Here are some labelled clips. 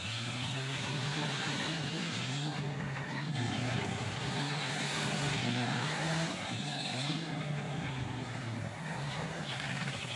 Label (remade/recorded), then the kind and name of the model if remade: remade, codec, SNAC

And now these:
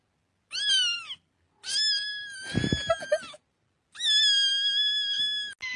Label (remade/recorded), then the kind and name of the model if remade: recorded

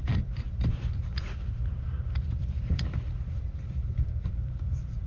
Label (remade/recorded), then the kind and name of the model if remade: remade, vocoder, BigVGAN v2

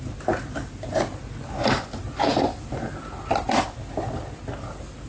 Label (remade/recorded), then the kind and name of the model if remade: recorded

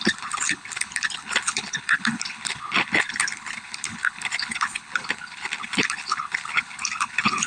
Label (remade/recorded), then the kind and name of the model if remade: remade, codec, HILCodec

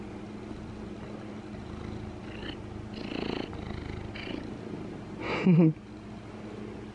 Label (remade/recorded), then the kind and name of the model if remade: recorded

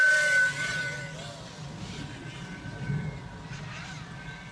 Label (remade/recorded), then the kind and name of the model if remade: recorded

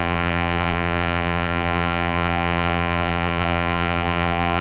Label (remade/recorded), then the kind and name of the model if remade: remade, vocoder, BigVGAN v2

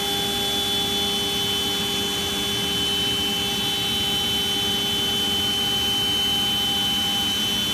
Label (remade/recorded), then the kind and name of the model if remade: recorded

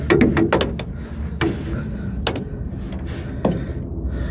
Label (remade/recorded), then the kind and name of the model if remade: recorded